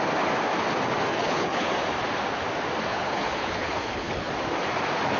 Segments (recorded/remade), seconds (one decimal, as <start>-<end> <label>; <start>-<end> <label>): 0.0-1.1 recorded; 1.1-1.7 remade; 1.7-2.9 recorded; 2.9-4.3 remade; 4.3-5.2 recorded